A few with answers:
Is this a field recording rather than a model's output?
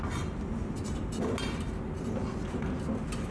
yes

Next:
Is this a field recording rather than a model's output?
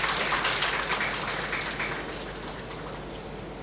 yes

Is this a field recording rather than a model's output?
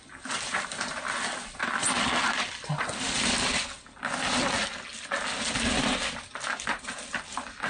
yes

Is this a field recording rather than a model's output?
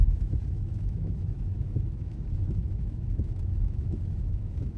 no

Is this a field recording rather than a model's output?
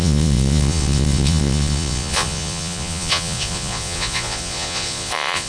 no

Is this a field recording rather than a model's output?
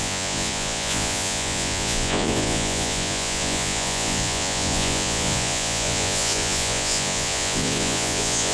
no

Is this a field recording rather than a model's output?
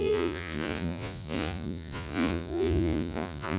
no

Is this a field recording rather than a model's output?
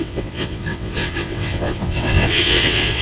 no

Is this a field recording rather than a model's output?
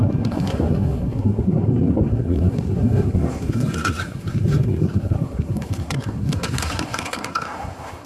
no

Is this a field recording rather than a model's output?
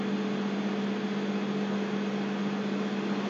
yes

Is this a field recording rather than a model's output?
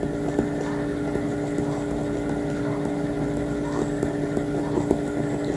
yes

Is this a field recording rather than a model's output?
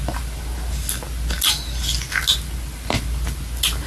yes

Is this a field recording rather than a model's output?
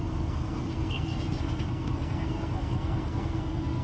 no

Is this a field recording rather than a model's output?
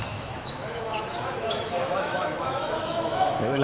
no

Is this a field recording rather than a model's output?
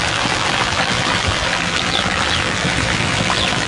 no